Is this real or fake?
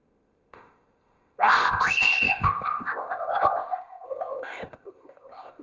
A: fake